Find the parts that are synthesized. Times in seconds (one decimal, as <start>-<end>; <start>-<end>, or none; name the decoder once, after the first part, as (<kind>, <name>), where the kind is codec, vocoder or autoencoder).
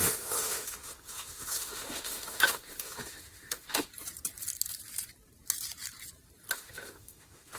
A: 0.0-3.9 (autoencoder, DAC-VAE); 6.5-7.6